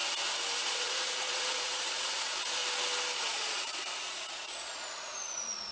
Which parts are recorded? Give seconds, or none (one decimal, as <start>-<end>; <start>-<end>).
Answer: 0.0-0.6; 2.6-3.2